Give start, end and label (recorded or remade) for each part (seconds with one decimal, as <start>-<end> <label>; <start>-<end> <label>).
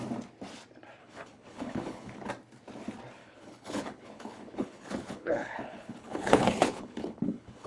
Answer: 0.0-1.0 recorded; 1.0-2.3 remade; 2.3-3.2 recorded; 3.2-7.7 remade